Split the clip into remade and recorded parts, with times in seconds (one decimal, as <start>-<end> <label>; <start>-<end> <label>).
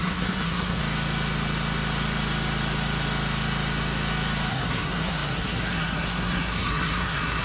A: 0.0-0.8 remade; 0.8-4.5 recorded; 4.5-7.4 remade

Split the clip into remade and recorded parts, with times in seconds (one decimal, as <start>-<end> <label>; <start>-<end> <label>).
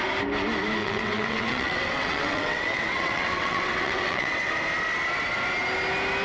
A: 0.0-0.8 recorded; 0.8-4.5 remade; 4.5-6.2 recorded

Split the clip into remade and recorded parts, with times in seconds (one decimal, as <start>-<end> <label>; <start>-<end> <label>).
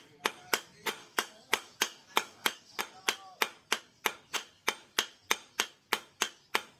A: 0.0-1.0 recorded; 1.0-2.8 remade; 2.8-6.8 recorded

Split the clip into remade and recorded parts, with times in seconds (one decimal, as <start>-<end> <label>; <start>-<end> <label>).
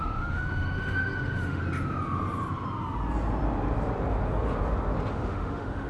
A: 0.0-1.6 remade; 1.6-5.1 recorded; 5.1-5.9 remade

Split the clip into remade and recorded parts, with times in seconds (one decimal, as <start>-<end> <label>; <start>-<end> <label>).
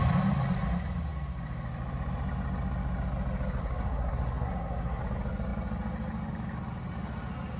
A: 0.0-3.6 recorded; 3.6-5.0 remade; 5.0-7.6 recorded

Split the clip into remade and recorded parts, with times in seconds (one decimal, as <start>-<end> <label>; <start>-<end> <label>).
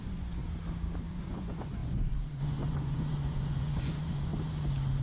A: 0.0-0.4 remade; 0.4-1.1 recorded; 1.1-4.3 remade; 4.3-5.0 recorded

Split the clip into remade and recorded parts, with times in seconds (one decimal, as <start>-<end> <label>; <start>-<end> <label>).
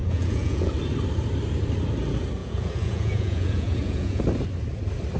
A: 0.0-0.7 remade; 0.7-2.4 recorded; 2.4-4.2 remade; 4.2-5.2 recorded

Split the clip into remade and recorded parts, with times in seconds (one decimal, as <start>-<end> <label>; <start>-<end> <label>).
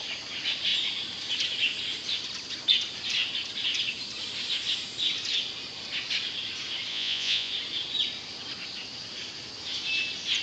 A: 0.0-6.9 recorded; 6.9-7.5 remade; 7.5-10.4 recorded